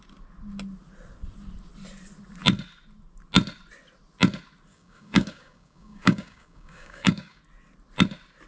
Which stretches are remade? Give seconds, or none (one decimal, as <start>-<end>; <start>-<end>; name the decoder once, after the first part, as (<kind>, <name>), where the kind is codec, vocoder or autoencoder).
4.7-7.4 (codec, DAC)